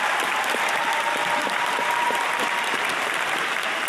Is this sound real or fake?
fake